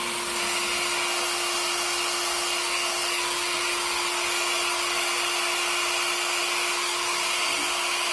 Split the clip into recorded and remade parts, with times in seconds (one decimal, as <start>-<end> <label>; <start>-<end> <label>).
0.0-8.1 recorded